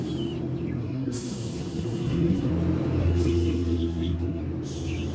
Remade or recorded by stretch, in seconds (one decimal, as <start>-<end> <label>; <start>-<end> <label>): 0.0-0.8 recorded; 0.8-2.5 remade; 2.5-3.0 recorded; 3.0-4.4 remade; 4.4-5.1 recorded